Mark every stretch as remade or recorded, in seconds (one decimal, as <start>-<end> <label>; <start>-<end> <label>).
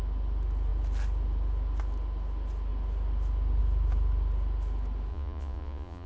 0.0-5.1 recorded; 5.1-6.1 remade